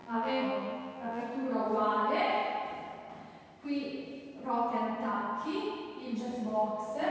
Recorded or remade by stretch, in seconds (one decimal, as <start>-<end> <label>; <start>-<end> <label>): 0.0-1.2 remade; 1.2-7.1 recorded